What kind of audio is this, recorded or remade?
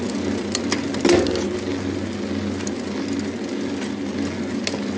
recorded